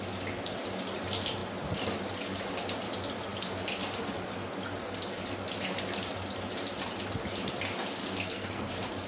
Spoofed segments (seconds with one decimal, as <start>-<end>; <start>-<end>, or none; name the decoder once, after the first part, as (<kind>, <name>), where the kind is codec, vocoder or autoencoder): 8.0-8.7 (codec, SNAC)